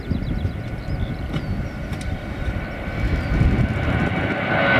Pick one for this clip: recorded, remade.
recorded